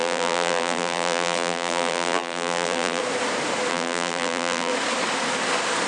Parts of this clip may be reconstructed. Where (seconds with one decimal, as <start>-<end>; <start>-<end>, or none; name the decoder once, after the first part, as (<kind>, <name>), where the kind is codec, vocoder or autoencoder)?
0.0-3.0 (vocoder, BigVGAN v2); 3.7-4.7